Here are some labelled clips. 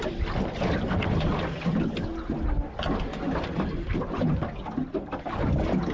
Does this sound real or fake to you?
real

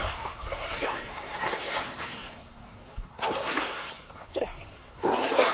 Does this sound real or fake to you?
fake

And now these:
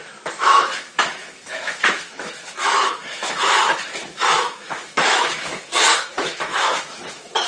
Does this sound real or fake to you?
fake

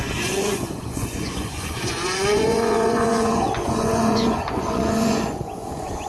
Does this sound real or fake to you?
fake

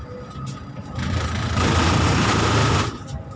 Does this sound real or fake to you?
real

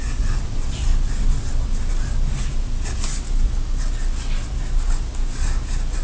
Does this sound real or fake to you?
real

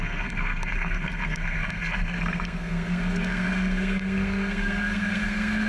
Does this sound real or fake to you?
fake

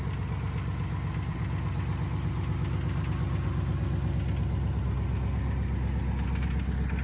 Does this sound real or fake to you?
real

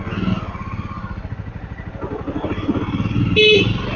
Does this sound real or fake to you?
real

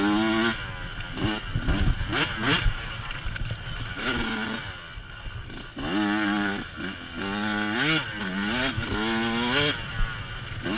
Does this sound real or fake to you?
real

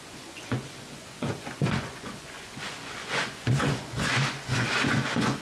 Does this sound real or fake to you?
fake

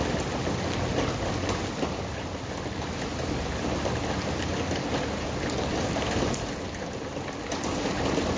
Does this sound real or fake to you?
real